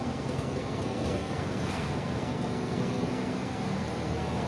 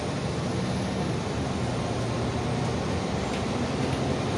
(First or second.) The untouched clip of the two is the second